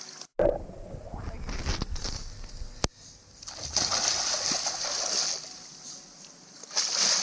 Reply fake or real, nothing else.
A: real